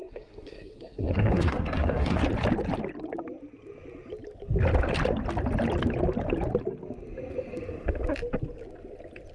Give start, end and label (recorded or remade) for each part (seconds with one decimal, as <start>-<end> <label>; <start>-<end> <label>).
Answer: 0.0-2.2 remade; 2.2-9.3 recorded